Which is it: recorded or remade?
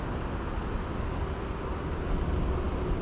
recorded